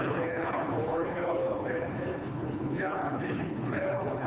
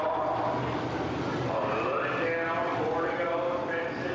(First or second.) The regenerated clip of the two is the first